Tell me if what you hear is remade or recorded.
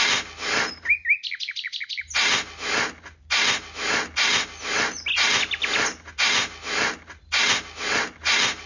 recorded